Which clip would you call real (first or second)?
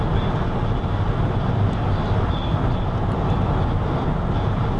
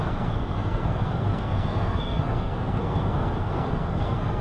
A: first